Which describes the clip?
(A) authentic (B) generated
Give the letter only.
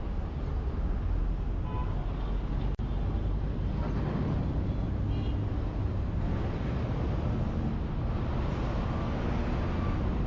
A